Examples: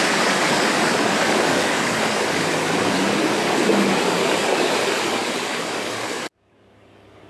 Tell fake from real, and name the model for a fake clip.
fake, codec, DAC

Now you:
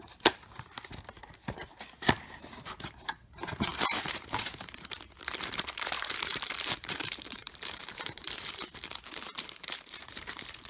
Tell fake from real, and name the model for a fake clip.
fake, vocoder, BigVGAN v2